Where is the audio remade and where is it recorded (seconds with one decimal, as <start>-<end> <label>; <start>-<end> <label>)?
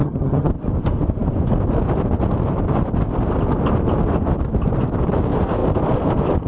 0.0-0.5 remade; 0.5-6.5 recorded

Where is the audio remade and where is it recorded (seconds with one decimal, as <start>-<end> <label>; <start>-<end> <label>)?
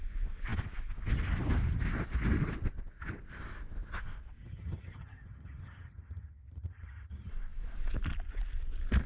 0.0-4.4 recorded; 4.4-7.3 remade; 7.3-9.1 recorded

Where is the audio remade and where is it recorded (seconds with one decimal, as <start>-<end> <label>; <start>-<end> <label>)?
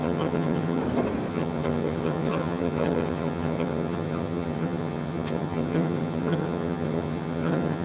0.0-0.8 remade; 0.8-1.3 recorded; 1.3-7.8 remade